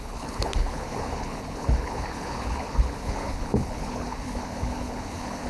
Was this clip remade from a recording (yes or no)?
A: yes